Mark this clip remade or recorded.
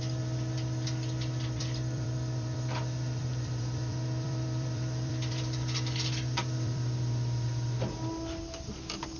remade